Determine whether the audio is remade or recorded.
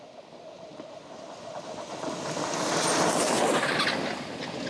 recorded